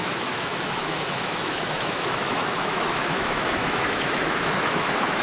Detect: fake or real fake